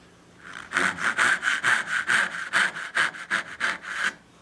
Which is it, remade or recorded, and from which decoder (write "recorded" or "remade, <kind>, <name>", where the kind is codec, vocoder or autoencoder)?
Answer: recorded